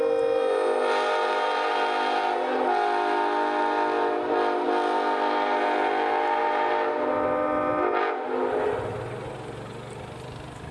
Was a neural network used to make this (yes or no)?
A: no